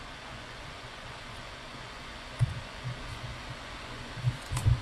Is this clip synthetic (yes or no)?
yes